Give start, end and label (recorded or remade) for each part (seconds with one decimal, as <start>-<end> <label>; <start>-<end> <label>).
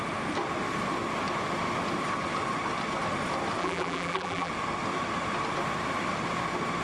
0.0-3.6 recorded; 3.6-4.5 remade; 4.5-6.8 recorded